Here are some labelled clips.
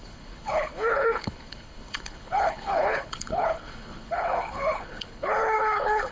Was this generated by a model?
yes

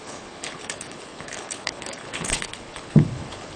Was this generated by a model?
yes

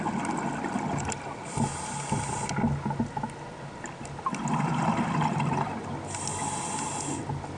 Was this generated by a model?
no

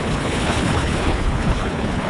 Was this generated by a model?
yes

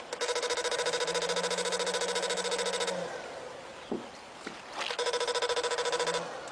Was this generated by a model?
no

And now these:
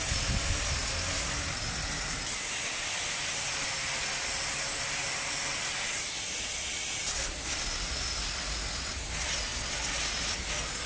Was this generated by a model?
no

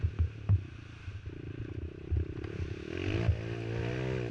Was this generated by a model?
no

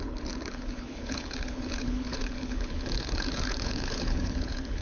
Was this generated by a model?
yes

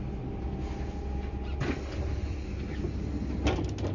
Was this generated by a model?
no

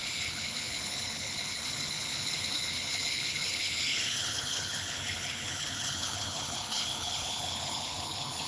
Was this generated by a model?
yes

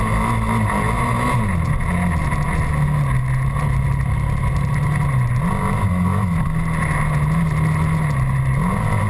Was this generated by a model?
no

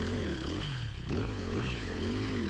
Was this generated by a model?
yes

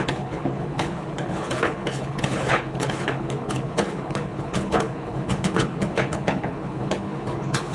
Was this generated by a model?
yes